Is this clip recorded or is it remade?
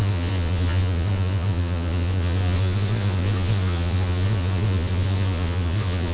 remade